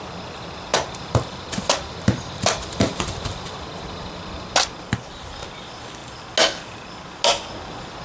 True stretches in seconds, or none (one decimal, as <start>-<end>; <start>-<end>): 0.0-8.0